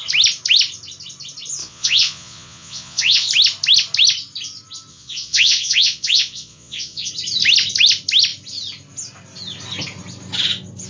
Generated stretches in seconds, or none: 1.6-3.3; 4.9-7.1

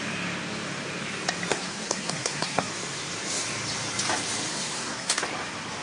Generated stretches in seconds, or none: 1.5-2.7; 4.5-5.2

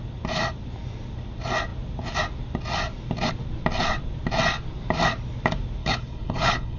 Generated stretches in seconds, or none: 5.8-6.8

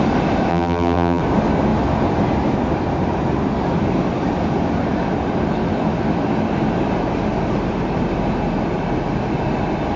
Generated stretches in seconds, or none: 0.5-1.2

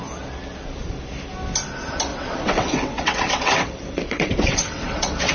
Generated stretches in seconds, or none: 2.1-5.3

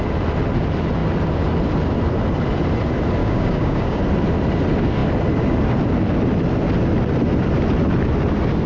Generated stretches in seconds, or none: 3.2-4.0

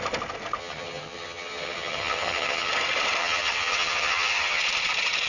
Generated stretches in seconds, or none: 0.6-2.7; 3.2-4.6